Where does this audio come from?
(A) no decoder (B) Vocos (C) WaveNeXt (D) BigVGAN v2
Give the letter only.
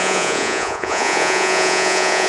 B